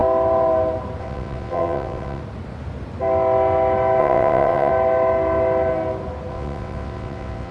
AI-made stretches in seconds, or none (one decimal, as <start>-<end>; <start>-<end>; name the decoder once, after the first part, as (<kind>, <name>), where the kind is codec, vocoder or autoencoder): 1.0-2.2 (vocoder, WaveNeXt); 4.0-4.7; 6.3-7.5